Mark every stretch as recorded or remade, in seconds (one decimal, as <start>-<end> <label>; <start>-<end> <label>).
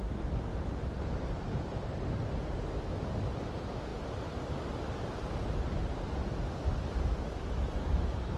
0.0-0.5 recorded; 0.5-2.0 remade; 2.0-8.4 recorded